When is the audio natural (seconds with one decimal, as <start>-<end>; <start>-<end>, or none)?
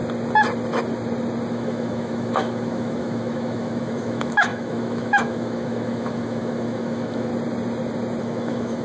0.0-1.5; 7.3-8.2